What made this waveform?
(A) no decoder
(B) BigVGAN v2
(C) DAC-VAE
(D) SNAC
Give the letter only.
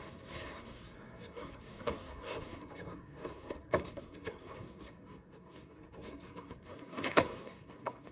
D